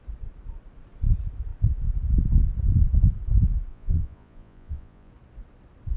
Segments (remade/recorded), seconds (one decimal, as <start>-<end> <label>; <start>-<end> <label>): 0.0-3.7 recorded; 3.7-5.1 remade; 5.1-6.0 recorded